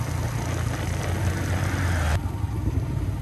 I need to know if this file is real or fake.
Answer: real